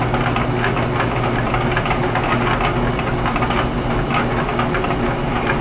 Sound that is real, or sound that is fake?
real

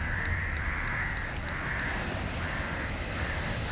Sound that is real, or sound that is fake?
real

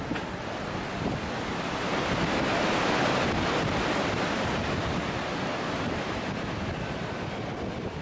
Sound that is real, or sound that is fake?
real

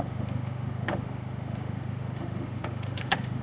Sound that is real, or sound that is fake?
fake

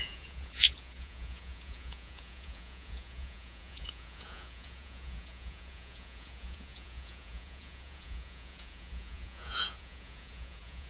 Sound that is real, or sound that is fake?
fake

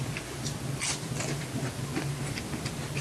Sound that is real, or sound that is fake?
real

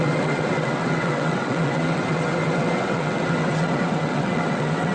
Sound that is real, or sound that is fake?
fake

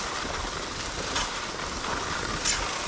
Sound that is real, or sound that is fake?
real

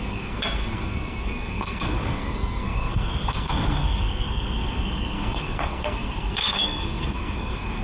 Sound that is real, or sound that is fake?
fake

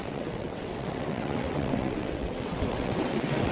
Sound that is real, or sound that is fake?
fake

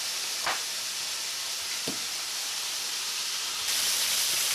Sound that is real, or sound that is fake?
fake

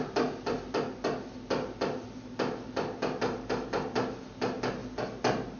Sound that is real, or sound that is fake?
real